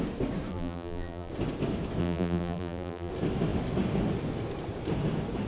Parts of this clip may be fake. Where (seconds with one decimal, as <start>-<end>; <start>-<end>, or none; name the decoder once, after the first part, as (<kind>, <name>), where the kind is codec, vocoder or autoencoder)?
0.5-1.3 (vocoder, BigVGAN v2); 2.0-3.1